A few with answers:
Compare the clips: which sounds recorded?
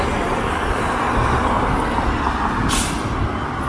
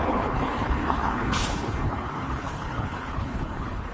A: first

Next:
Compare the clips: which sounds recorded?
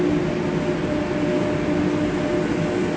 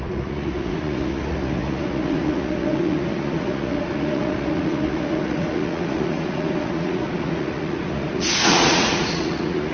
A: first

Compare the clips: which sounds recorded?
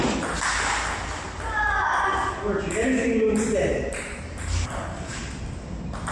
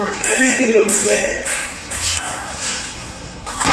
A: first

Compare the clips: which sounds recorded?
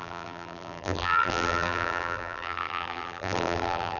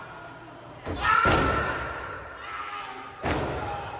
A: second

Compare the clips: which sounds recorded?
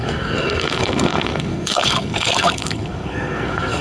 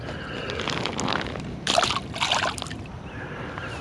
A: second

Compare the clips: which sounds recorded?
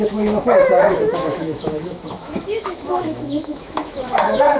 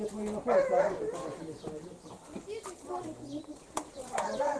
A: second